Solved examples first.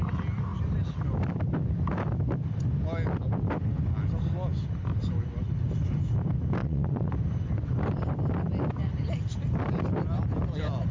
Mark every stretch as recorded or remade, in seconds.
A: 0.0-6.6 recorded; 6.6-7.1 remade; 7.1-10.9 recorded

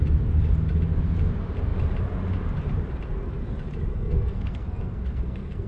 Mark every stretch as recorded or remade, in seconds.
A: 0.0-3.9 recorded; 3.9-5.7 remade

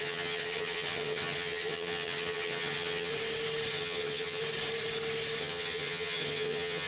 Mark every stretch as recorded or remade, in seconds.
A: 0.0-3.1 remade; 3.1-3.7 recorded; 3.7-4.4 remade; 4.4-5.4 recorded; 5.4-6.9 remade

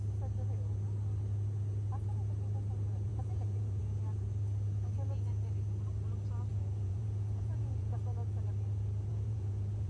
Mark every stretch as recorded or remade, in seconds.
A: 0.0-3.1 recorded; 3.1-3.8 remade; 3.8-6.5 recorded; 6.5-8.0 remade; 8.0-9.1 recorded; 9.1-9.9 remade

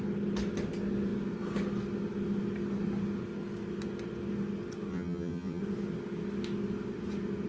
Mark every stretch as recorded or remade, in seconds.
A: 0.0-4.9 recorded; 4.9-5.6 remade; 5.6-7.5 recorded